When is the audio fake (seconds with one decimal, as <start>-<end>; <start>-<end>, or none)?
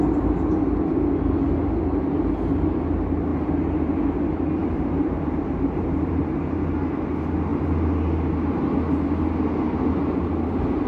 3.3-3.9; 4.6-6.2